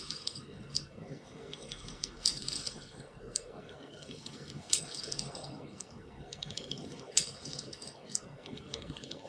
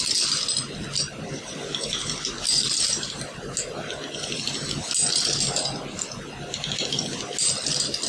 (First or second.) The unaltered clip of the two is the second